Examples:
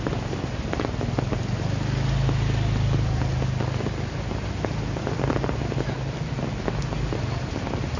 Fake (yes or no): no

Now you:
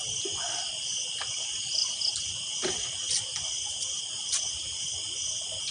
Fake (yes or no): no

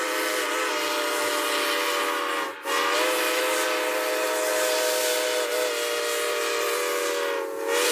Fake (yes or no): no